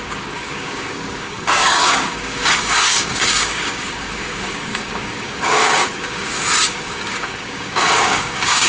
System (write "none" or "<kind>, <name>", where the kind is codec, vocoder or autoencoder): codec, DAC